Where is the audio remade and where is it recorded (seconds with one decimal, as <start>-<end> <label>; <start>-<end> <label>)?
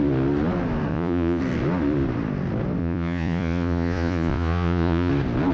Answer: 0.0-0.9 recorded; 0.9-1.4 remade; 1.4-2.8 recorded; 2.8-5.1 remade; 5.1-5.5 recorded